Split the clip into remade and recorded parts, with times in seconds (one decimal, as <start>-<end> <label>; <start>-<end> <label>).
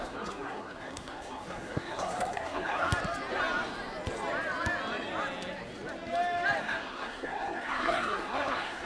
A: 0.0-2.9 remade; 2.9-6.6 recorded; 6.6-8.9 remade